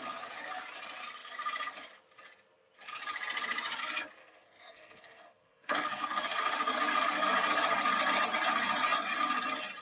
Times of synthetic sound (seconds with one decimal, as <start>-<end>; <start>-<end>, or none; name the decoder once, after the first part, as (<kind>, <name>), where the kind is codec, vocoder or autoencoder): 4.2-6.0 (codec, SNAC)